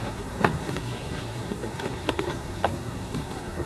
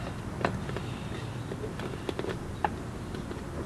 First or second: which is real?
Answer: second